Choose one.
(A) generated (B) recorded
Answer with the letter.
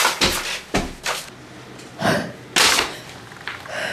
B